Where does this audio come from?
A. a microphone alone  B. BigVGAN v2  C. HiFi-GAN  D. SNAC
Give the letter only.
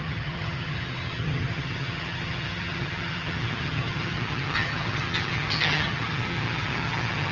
C